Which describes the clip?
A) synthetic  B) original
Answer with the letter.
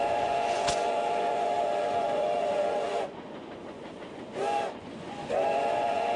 A